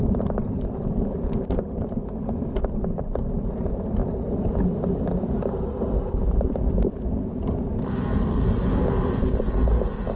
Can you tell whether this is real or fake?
fake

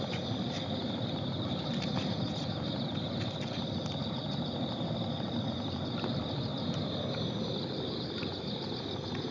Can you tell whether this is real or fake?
fake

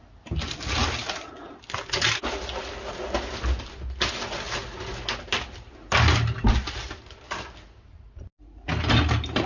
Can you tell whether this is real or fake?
real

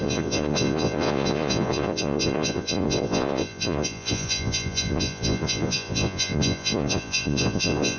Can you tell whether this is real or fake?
fake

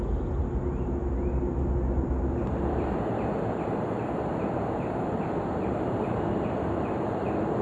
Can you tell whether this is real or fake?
real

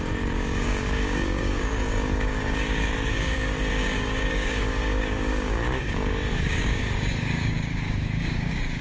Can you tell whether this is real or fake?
fake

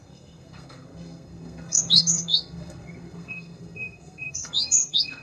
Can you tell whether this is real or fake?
fake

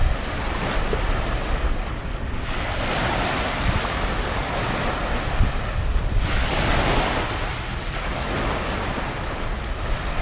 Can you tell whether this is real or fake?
real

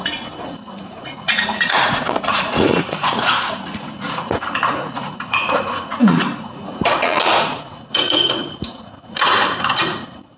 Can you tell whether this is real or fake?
fake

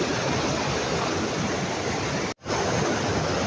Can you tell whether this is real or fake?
real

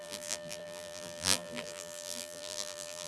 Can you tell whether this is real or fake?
fake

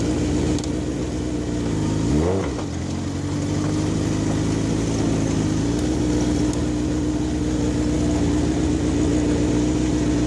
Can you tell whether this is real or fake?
real